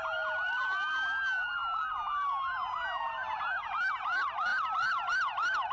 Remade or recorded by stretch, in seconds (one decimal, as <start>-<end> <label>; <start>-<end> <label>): 0.0-5.7 recorded